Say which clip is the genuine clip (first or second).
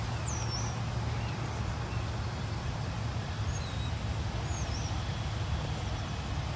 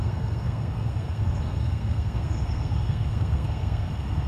first